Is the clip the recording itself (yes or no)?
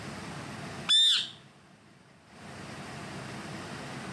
yes